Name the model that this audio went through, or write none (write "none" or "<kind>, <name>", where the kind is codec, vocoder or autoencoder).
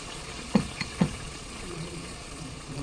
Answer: vocoder, Vocos